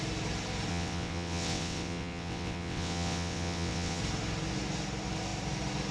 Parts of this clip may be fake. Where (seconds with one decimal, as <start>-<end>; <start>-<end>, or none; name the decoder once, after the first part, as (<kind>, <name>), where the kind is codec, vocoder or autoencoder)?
0.7-4.0 (vocoder, WaveNeXt)